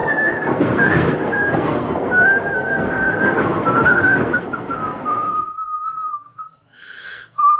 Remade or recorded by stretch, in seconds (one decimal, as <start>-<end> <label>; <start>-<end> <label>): 0.0-7.6 remade